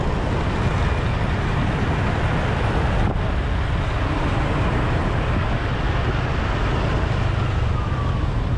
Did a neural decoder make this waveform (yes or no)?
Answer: no